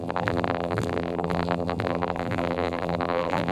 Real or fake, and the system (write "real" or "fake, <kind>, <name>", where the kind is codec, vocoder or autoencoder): fake, vocoder, BigVGAN v2